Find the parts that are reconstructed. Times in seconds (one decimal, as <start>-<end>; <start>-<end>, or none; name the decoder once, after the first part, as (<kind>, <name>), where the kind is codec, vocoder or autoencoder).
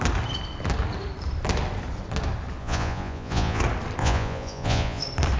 2.6-3.6 (vocoder, Vocos); 4.0-5.0